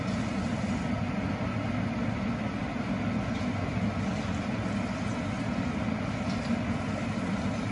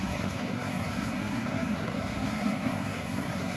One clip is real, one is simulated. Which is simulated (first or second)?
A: second